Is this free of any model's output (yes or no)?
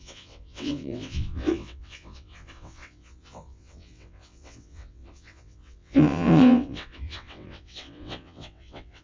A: no